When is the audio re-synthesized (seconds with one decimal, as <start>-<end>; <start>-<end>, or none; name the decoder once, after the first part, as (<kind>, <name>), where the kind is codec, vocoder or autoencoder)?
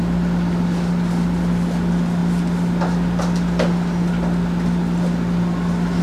none